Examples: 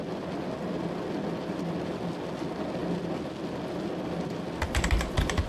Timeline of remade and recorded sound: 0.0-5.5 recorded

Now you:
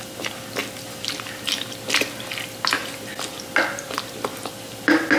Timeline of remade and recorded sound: 0.0-5.2 recorded

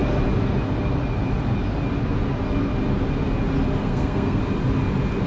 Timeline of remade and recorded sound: 0.0-3.8 recorded; 3.8-4.4 remade; 4.4-5.3 recorded

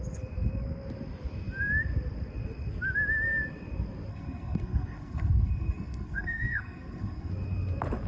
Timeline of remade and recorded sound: 0.0-4.1 recorded; 4.1-7.3 remade; 7.3-8.1 recorded

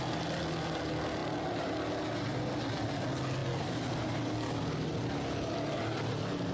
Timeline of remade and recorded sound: 0.0-6.5 recorded

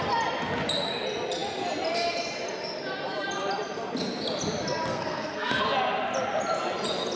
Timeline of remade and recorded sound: 0.0-4.9 recorded; 4.9-5.6 remade; 5.6-7.2 recorded